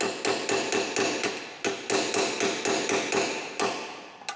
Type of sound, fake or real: real